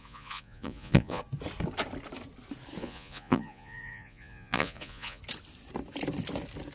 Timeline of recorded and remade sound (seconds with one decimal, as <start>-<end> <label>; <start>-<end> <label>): 0.0-1.2 remade; 1.2-2.8 recorded; 2.8-5.2 remade; 5.2-6.7 recorded